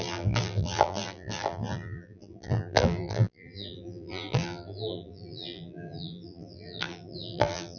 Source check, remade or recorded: remade